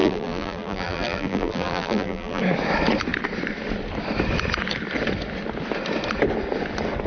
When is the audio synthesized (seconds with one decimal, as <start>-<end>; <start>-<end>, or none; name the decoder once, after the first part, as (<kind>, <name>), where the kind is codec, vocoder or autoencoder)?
0.0-2.4 (vocoder, BigVGAN v2)

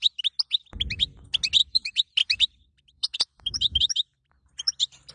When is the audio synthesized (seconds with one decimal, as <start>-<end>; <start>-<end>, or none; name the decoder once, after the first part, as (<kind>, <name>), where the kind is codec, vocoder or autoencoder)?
1.6-5.1 (vocoder, BigVGAN v2)

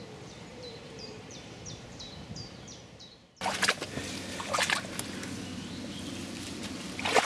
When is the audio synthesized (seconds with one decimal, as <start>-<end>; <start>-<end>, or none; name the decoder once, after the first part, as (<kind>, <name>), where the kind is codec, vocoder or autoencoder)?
0.5-3.7 (vocoder, BigVGAN v2)

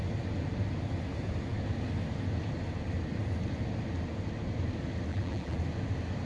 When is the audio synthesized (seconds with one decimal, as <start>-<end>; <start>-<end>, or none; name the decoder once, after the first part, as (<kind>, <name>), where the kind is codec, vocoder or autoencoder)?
5.1-5.6 (vocoder, BigVGAN v2)

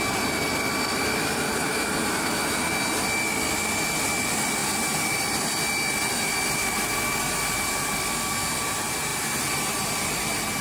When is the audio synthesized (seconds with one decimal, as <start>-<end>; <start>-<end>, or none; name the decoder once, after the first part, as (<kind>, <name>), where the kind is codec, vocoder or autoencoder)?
1.6-2.4 (vocoder, BigVGAN v2)